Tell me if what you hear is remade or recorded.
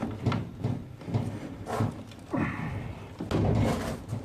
recorded